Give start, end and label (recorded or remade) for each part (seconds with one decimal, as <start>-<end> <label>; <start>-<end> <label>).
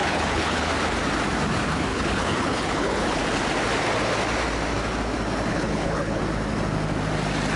0.0-0.7 remade; 0.7-1.9 recorded; 1.9-3.2 remade; 3.2-5.5 recorded; 5.5-6.2 remade; 6.2-7.6 recorded